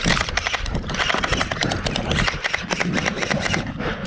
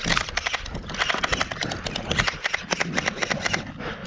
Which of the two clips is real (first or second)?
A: second